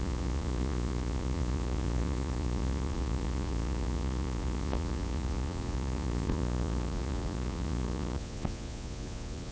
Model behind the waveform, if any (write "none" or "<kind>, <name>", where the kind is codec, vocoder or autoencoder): vocoder, Vocos